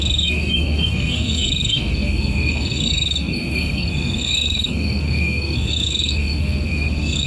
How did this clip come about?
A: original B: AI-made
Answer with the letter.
B